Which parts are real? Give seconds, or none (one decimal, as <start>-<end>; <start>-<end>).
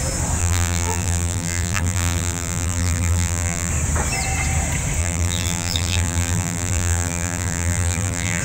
0.0-0.4; 3.7-5.0